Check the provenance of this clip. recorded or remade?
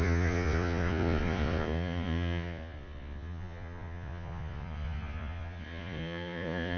remade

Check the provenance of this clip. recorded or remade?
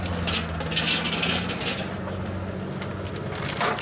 recorded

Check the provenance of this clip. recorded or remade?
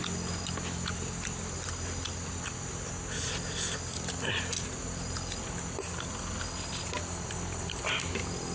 recorded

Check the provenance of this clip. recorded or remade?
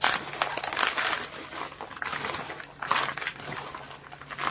recorded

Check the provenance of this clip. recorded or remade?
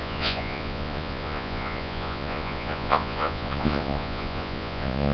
remade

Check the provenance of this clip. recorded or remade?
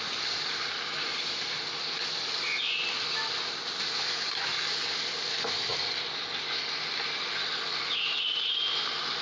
recorded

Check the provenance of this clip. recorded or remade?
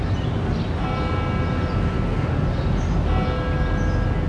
recorded